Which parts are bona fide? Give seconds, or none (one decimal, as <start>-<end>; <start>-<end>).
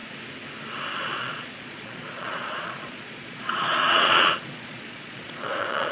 0.0-1.0